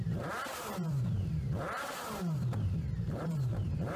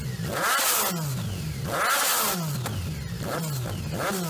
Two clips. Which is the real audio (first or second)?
second